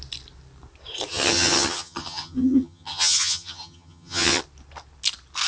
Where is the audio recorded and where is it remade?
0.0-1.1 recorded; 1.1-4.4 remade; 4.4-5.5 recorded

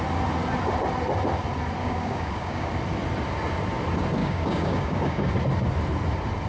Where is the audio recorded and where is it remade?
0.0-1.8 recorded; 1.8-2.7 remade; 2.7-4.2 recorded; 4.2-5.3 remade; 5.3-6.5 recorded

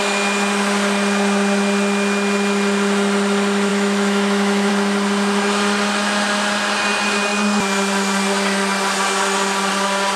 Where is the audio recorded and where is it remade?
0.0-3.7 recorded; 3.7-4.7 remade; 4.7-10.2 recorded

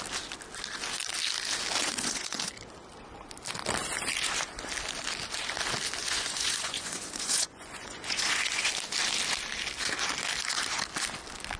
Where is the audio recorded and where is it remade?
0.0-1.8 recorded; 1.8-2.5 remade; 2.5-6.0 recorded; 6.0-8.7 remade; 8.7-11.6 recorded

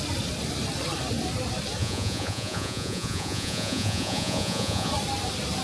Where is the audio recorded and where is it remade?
0.0-1.8 recorded; 1.8-4.9 remade; 4.9-5.6 recorded

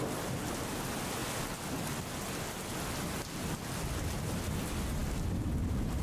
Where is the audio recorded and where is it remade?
0.0-6.0 recorded

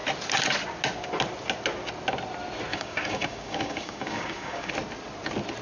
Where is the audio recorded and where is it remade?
0.0-2.7 recorded; 2.7-4.7 remade; 4.7-5.6 recorded

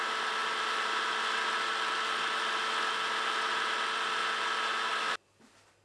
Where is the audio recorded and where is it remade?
0.0-5.8 recorded